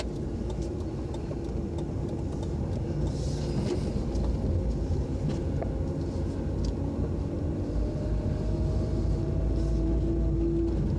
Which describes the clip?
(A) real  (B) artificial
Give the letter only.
A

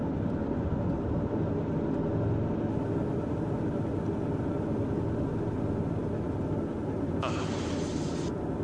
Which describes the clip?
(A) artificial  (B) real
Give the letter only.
B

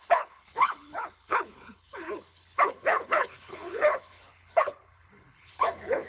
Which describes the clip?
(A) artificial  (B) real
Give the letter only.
A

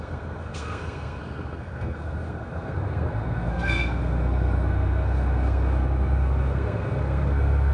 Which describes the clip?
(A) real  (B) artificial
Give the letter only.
B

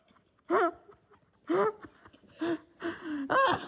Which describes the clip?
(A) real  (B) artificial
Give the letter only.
A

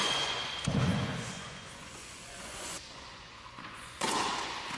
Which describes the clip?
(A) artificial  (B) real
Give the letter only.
A